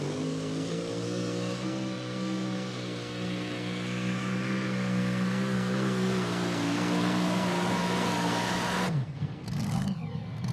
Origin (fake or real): fake